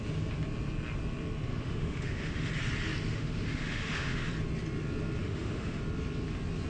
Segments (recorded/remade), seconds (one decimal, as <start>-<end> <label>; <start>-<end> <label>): 0.0-1.5 recorded; 1.5-2.5 remade; 2.5-3.1 recorded; 3.1-4.3 remade; 4.3-5.2 recorded; 5.2-5.8 remade; 5.8-6.7 recorded

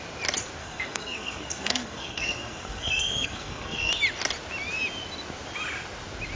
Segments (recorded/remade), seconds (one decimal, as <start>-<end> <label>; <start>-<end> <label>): 0.0-0.6 recorded; 0.6-3.9 remade; 3.9-6.4 recorded

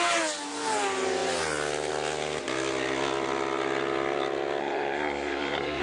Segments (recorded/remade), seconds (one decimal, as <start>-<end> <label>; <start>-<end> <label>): 0.0-4.6 recorded; 4.6-5.8 remade

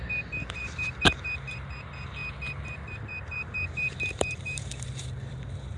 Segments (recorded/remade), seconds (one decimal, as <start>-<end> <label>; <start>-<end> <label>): 0.0-2.2 remade; 2.2-2.9 recorded; 2.9-5.8 remade

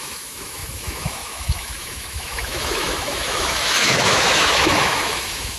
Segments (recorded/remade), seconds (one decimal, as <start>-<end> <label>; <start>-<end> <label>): 0.0-5.6 remade

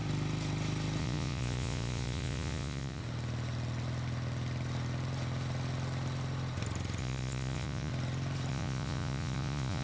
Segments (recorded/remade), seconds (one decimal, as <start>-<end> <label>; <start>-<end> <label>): 0.0-1.0 recorded; 1.0-3.0 remade; 3.0-7.0 recorded; 7.0-7.9 remade; 7.9-8.5 recorded; 8.5-9.8 remade